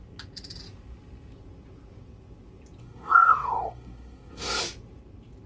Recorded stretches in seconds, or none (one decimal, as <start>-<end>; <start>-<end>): 0.0-2.8; 4.6-5.5